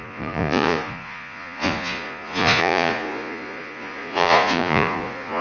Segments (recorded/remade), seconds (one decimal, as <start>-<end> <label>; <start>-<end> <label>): 0.0-5.4 remade